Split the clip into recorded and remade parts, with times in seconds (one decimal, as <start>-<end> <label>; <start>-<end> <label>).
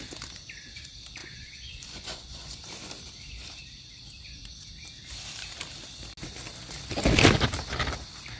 0.0-1.2 recorded; 1.2-2.6 remade; 2.6-8.4 recorded